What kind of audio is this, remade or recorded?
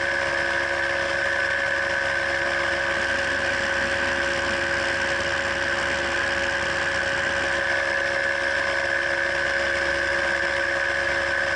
recorded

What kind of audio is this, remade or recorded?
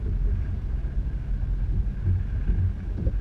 recorded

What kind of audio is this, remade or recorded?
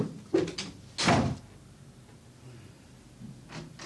recorded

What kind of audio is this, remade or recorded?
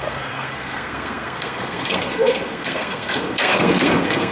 remade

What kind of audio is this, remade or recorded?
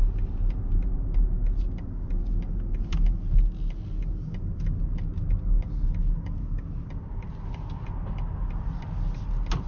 recorded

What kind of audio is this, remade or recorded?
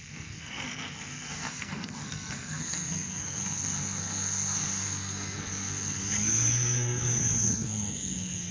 remade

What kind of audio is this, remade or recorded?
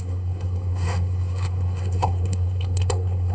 remade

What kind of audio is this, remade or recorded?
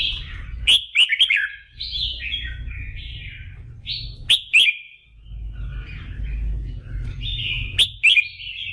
recorded